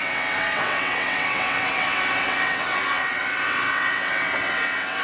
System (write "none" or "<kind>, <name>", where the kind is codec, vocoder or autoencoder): vocoder, WaveNeXt